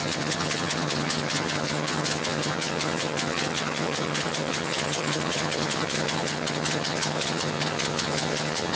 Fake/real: fake